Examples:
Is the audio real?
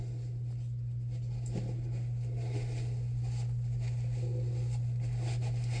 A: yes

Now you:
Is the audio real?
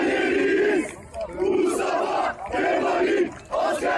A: yes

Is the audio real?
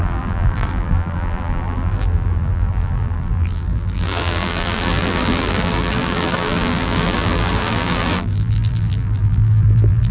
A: no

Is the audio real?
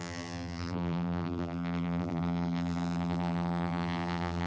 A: no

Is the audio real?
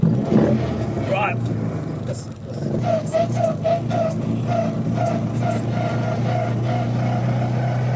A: yes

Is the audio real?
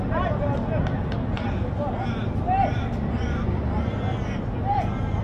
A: yes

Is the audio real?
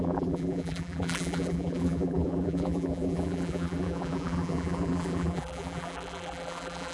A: no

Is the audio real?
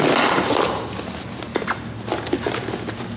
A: yes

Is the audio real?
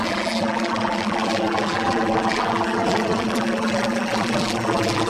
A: no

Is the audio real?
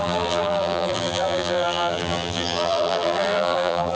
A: no